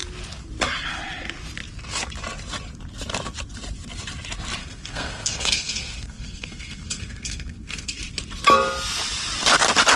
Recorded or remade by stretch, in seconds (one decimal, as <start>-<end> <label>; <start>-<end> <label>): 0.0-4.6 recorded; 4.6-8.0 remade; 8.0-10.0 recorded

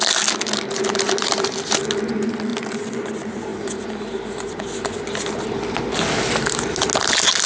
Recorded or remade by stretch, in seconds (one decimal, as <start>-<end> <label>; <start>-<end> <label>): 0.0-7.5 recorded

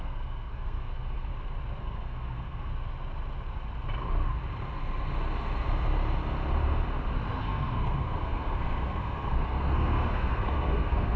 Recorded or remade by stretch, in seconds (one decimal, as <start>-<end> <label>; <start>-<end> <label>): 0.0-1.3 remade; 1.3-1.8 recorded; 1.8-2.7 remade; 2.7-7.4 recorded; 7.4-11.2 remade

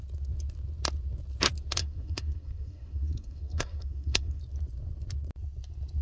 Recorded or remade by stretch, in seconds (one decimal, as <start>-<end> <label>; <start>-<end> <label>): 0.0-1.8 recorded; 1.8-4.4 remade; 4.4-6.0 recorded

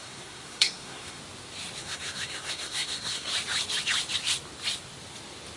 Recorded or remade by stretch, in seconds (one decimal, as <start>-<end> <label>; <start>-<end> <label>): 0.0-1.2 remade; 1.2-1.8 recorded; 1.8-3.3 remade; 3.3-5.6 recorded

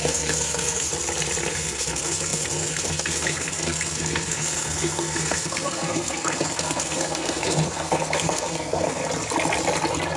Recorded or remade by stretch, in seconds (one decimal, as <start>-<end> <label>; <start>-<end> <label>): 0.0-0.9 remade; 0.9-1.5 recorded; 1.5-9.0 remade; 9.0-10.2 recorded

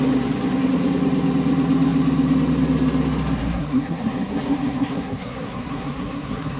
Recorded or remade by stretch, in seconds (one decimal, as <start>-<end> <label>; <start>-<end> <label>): 0.0-3.4 recorded; 3.4-6.6 remade

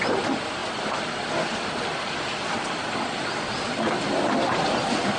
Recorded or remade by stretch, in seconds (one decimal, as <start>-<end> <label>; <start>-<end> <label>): 0.0-5.2 recorded